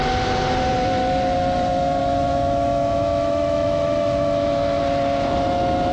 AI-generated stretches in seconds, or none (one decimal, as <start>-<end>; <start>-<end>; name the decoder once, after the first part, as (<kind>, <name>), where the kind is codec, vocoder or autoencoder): 2.0-4.8 (autoencoder, DAC-VAE)